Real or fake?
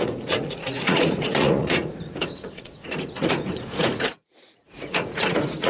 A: fake